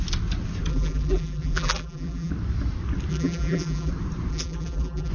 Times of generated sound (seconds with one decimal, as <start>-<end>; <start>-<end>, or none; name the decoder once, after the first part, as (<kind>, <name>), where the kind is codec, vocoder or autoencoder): 0.7-2.3 (vocoder, BigVGAN v2); 3.1-3.9; 4.3-5.1